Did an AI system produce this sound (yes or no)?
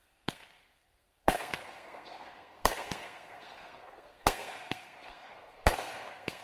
yes